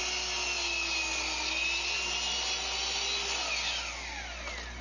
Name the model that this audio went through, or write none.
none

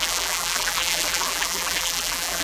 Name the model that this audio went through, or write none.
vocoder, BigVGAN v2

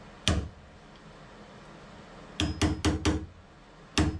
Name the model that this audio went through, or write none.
none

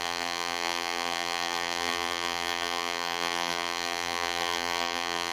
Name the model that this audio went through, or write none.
vocoder, BigVGAN v2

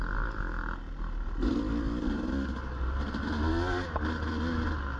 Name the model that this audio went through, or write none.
none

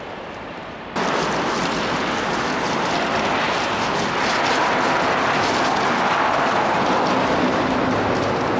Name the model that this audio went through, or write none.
none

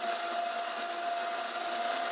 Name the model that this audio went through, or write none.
none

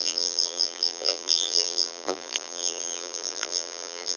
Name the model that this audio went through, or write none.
vocoder, BigVGAN v2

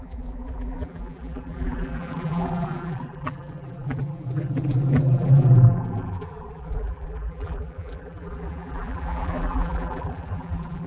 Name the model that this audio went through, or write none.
vocoder, BigVGAN v2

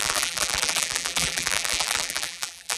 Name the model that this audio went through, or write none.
vocoder, BigVGAN v2